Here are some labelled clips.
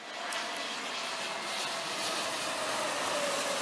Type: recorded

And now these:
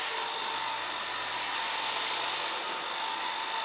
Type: recorded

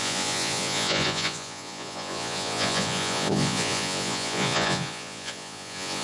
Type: remade